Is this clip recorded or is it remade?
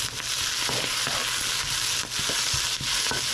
recorded